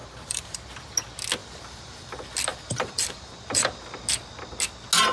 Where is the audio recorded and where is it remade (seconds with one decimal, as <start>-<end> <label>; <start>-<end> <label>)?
0.0-0.7 remade; 0.7-1.4 recorded; 1.4-2.1 remade; 2.1-2.5 recorded; 2.5-4.0 remade; 4.0-5.1 recorded